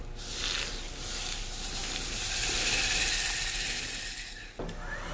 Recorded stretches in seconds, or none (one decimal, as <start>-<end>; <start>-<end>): 0.0-5.1